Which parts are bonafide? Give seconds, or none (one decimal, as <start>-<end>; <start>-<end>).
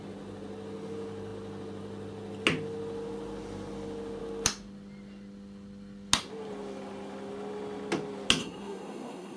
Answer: 0.0-8.4